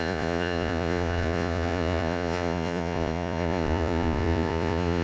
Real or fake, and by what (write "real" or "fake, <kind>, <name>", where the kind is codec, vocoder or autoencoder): fake, vocoder, Vocos